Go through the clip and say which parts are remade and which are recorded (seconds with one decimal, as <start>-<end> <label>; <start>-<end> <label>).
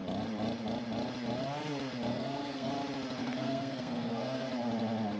0.0-2.1 recorded; 2.1-2.7 remade; 2.7-3.2 recorded; 3.2-4.5 remade; 4.5-5.2 recorded